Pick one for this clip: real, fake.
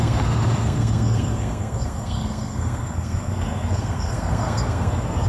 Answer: fake